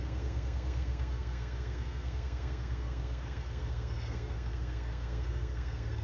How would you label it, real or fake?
fake